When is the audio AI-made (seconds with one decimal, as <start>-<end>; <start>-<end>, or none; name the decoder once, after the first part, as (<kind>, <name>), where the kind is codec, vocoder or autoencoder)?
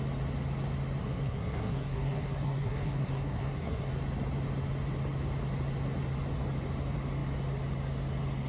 1.0-3.9 (codec, SNAC)